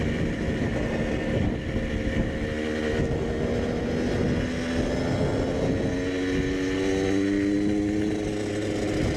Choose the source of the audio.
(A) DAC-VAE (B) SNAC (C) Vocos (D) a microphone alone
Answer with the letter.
D